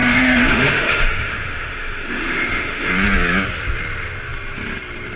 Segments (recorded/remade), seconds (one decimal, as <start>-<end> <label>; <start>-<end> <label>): 0.0-2.9 remade; 2.9-5.2 recorded